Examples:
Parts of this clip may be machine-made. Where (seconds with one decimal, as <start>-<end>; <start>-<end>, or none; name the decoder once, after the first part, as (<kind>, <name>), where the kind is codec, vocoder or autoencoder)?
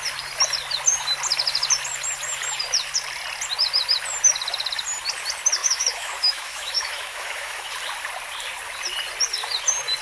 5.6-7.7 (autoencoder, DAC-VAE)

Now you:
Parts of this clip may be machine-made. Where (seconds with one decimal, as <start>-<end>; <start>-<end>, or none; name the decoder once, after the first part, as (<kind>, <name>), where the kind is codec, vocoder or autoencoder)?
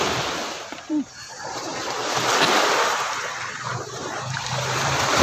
0.0-5.2 (vocoder, BigVGAN v2)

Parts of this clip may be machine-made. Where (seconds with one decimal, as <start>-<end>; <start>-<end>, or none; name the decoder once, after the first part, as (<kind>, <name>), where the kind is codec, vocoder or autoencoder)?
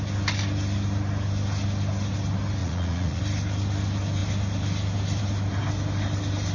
2.6-3.2 (vocoder, Vocos)